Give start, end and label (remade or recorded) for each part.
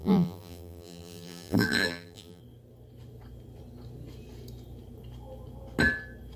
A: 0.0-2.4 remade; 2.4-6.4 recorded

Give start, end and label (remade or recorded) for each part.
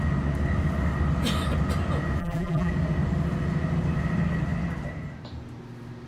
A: 0.0-2.2 recorded; 2.2-2.7 remade; 2.7-6.1 recorded